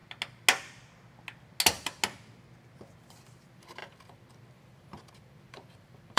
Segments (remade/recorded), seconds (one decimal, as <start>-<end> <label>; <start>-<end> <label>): 0.0-3.0 recorded; 3.0-6.2 remade